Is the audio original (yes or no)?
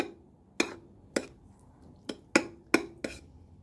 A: yes